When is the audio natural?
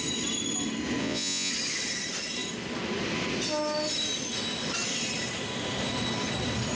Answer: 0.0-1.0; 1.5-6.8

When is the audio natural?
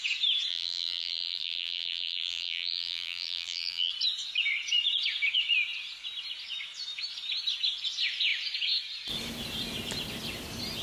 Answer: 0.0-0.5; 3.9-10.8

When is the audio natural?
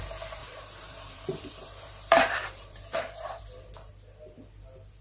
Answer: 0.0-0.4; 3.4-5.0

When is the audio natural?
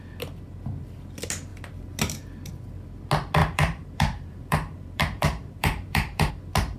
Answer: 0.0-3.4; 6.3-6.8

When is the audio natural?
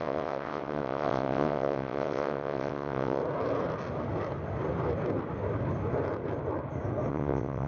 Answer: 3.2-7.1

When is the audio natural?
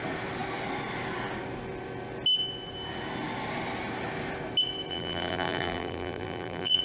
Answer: 0.0-4.9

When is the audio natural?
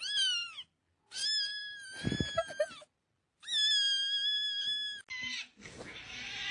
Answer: 0.0-6.5